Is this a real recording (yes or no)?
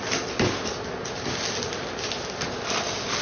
yes